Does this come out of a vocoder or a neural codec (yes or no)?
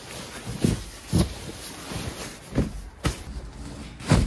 no